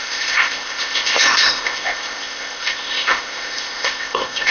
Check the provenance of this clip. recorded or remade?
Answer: remade